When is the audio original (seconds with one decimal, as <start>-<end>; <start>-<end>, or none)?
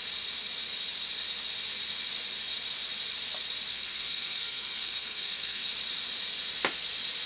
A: 0.0-3.7; 5.7-7.3